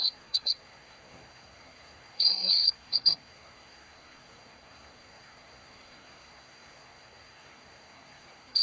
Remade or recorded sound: remade